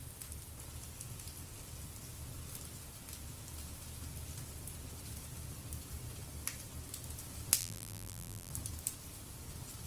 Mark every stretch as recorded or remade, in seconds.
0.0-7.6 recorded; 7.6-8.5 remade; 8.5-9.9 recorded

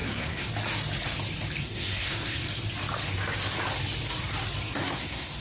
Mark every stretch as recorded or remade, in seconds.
0.0-0.5 remade; 0.5-1.6 recorded; 1.6-2.4 remade; 2.4-4.8 recorded; 4.8-5.4 remade

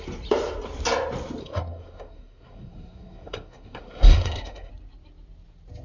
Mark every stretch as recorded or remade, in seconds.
0.0-1.4 recorded; 1.4-4.7 remade; 4.7-5.8 recorded

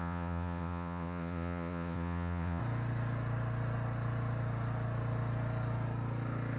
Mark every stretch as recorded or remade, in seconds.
0.0-2.6 remade; 2.6-6.6 recorded